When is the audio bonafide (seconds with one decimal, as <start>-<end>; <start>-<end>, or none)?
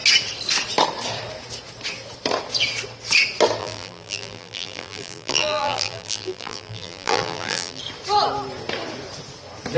0.0-3.6; 7.8-9.8